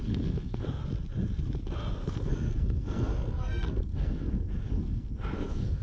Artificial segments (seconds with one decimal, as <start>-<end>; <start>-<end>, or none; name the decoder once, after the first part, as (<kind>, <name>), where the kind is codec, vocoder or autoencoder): 0.0-0.8 (codec, SNAC); 1.9-5.8